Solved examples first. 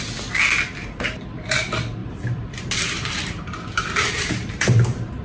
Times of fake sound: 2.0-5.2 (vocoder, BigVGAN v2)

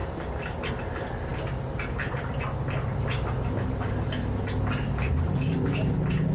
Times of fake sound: none

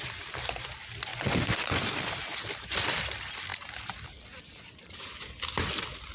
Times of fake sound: 1.1-1.8 (vocoder, Vocos)

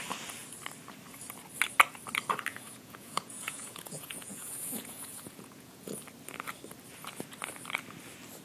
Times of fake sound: 2.5-5.9 (vocoder, Vocos)